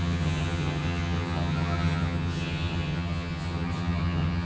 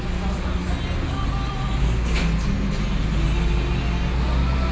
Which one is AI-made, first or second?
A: first